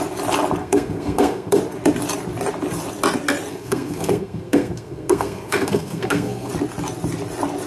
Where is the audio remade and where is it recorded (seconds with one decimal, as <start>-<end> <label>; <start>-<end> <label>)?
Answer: 0.0-0.6 recorded; 0.6-1.6 remade; 1.6-3.5 recorded; 3.5-6.5 remade; 6.5-7.7 recorded